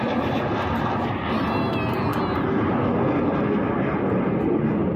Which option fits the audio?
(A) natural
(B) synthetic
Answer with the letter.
A